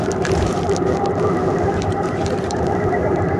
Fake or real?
fake